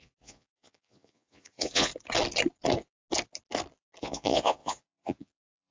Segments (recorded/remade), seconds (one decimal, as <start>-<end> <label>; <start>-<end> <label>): 0.0-1.9 remade; 1.9-4.0 recorded; 4.0-5.7 remade